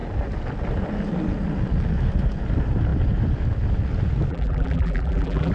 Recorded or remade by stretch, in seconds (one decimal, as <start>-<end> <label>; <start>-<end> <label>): 0.0-4.3 recorded; 4.3-5.5 remade